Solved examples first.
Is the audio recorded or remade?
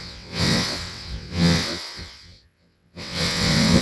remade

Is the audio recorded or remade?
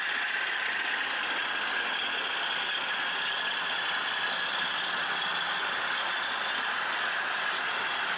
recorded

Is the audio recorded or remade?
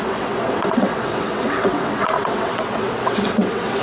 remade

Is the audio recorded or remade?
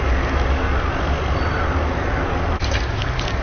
recorded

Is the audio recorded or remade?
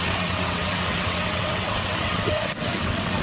remade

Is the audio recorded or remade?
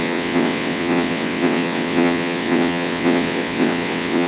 remade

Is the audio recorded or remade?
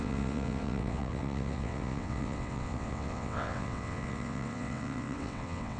remade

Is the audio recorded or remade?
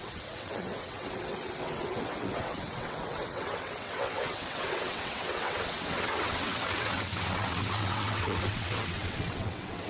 remade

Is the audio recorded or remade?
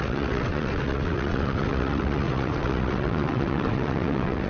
remade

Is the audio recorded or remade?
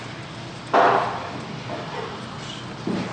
recorded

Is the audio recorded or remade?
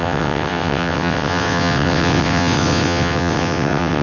remade